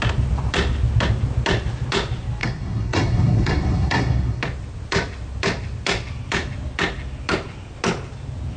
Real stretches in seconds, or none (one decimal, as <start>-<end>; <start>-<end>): 0.0-2.4; 4.4-8.6